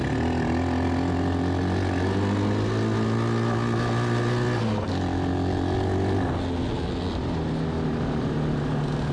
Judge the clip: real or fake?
real